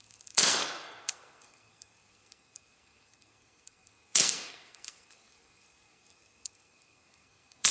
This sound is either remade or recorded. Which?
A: remade